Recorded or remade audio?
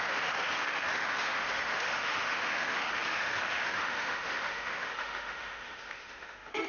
remade